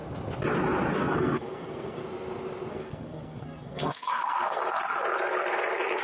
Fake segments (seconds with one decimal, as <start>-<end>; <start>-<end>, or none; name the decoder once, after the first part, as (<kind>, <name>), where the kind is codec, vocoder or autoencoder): 1.0-2.0 (codec, SNAC); 2.7-4.6